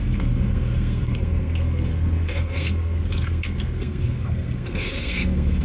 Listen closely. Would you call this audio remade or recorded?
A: remade